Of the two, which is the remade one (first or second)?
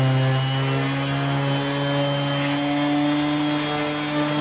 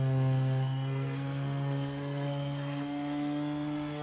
second